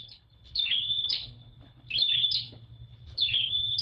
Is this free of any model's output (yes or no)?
no